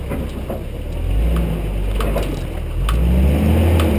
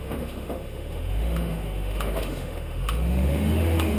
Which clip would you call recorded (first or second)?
first